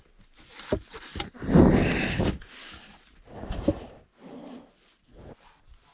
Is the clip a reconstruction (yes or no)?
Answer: no